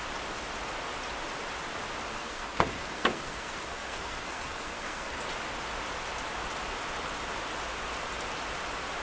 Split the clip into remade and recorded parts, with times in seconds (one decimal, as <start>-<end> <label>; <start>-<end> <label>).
0.0-2.1 recorded; 2.1-5.2 remade; 5.2-9.0 recorded